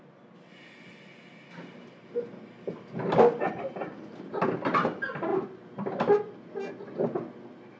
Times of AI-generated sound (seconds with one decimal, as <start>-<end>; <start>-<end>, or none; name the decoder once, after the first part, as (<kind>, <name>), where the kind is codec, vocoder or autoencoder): none